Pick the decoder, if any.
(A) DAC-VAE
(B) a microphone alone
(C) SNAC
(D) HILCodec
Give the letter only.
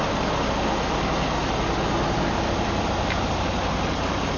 B